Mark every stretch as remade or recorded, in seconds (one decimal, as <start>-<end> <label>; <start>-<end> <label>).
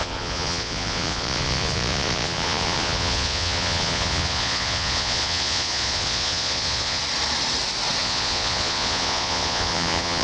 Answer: 0.0-7.0 remade; 7.0-8.0 recorded; 8.0-10.2 remade